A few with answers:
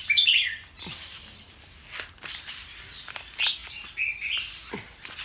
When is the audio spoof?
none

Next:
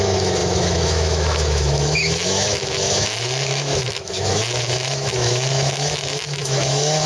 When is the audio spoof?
0.0-7.1 (autoencoder, DAC-VAE)

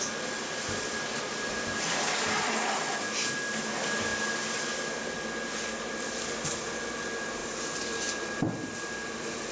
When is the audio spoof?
none

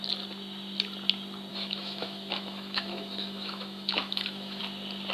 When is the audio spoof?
1.5-4.6 (autoencoder, DAC-VAE)